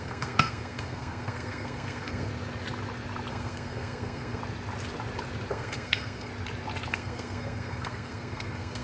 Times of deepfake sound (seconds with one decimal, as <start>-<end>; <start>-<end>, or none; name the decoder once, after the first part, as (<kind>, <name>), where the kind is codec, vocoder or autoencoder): 0.0-2.3 (codec, SNAC); 3.3-4.4; 5.5-6.3; 6.9-8.8